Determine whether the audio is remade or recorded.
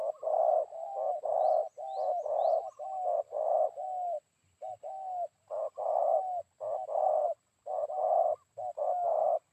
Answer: recorded